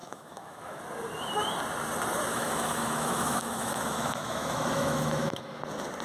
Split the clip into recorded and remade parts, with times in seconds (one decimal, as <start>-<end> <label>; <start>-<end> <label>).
0.0-0.8 remade; 0.8-2.3 recorded; 2.3-5.6 remade; 5.6-6.0 recorded